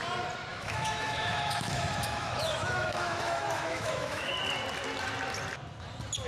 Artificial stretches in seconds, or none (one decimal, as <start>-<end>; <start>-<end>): 0.5-4.3